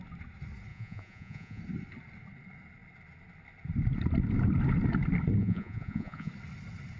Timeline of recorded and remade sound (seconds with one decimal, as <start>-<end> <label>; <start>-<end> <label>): 0.0-0.7 recorded; 0.7-1.6 remade; 1.6-5.4 recorded; 5.4-6.3 remade; 6.3-7.0 recorded